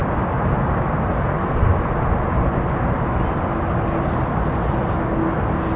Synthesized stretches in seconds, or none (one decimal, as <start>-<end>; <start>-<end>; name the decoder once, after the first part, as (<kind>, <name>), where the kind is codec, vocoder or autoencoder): none